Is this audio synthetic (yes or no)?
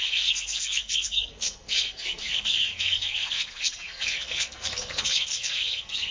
yes